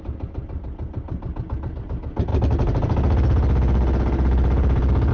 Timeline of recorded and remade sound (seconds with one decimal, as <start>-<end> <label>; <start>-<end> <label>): 0.0-5.1 recorded